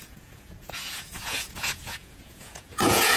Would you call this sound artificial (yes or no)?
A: yes